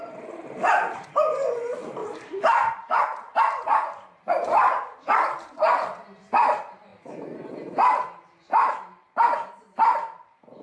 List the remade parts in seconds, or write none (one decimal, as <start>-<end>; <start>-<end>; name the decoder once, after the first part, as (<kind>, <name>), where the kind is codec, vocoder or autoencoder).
0.0-6.9 (vocoder, BigVGAN v2); 7.5-10.6